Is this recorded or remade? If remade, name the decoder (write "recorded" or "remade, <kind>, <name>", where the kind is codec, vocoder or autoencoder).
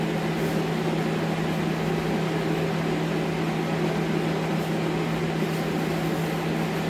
recorded